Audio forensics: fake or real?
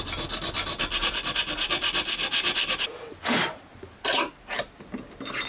real